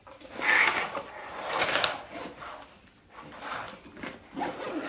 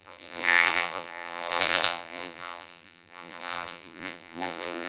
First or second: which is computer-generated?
second